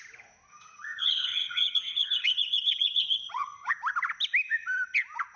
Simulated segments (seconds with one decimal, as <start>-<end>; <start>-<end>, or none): 0.5-3.7